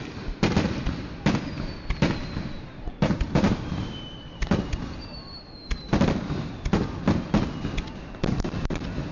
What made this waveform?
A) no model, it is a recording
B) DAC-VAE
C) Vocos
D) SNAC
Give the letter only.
A